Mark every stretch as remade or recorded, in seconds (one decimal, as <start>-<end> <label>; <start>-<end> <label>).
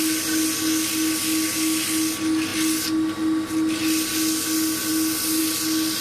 0.0-6.0 recorded